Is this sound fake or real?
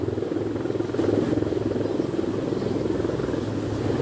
real